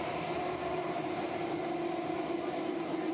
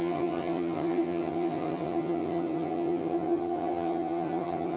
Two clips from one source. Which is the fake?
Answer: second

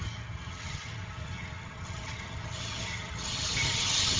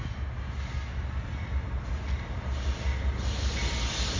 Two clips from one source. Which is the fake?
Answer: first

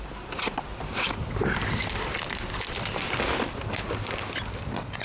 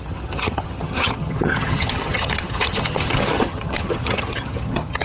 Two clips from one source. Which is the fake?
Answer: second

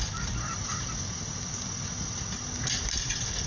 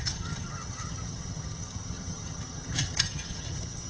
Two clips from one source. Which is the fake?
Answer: second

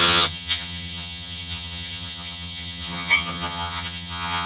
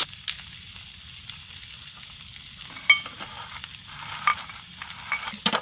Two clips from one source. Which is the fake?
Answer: first